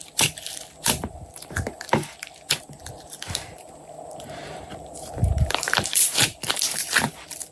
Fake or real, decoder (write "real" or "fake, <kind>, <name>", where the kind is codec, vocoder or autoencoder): fake, vocoder, BigVGAN v2